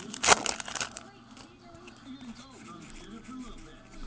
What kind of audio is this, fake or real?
real